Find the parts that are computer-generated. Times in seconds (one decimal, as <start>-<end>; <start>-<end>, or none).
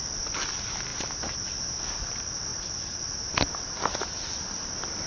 none